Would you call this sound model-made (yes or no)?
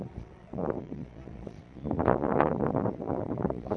yes